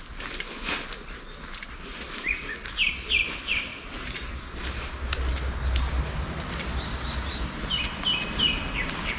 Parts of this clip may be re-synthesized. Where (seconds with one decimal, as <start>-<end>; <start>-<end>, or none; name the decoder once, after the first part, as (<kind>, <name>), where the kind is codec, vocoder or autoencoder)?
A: none